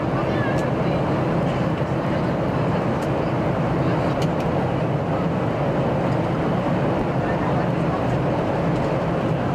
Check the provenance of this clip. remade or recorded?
recorded